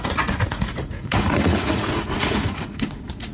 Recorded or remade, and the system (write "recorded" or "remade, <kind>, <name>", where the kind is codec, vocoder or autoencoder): remade, vocoder, Vocos